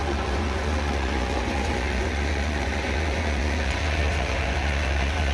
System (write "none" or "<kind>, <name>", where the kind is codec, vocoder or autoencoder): vocoder, Vocos